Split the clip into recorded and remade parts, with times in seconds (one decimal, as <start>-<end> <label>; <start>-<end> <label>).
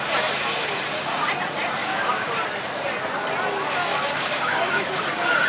0.0-1.8 recorded; 1.8-2.3 remade; 2.3-3.9 recorded; 3.9-5.0 remade; 5.0-5.5 recorded